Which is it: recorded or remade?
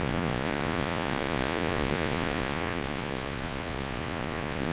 remade